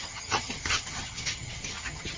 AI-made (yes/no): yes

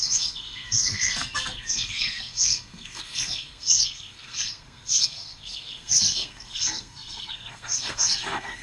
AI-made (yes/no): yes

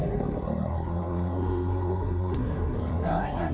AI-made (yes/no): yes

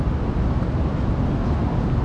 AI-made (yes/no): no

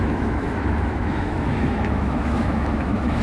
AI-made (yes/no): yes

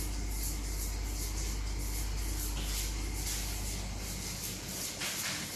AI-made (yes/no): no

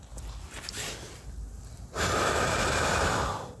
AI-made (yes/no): no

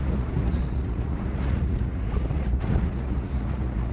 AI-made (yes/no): yes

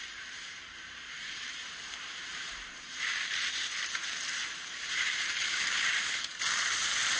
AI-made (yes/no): yes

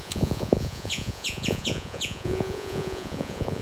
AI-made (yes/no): yes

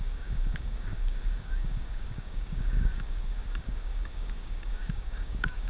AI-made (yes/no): yes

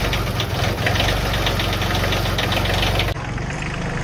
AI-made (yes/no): no